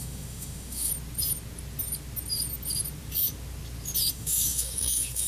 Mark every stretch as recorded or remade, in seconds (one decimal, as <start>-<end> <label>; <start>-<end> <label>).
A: 0.0-0.9 remade; 0.9-4.1 recorded; 4.1-5.3 remade

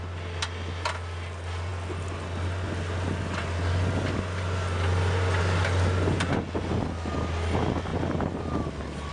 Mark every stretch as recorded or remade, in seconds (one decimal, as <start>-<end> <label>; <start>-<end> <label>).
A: 0.0-9.1 recorded

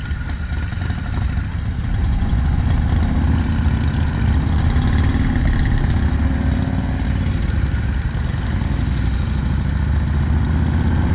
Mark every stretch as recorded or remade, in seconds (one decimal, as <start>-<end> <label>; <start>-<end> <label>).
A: 0.0-2.0 recorded; 2.0-2.6 remade; 2.6-11.1 recorded